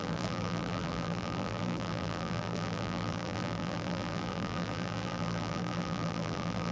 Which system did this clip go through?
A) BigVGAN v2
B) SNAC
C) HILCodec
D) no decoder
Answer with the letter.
A